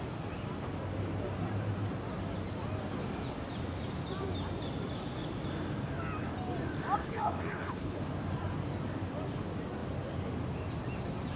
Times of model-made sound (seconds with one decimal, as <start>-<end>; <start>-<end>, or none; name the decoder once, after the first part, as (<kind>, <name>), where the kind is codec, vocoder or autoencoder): 7.0-8.0 (codec, HILCodec)